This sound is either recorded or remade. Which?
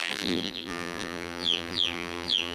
remade